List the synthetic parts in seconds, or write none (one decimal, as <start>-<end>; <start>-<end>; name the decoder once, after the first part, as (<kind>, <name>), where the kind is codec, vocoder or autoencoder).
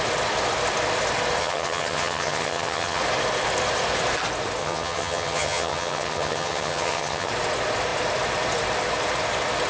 1.4-3.0 (vocoder, HiFi-GAN); 4.6-7.3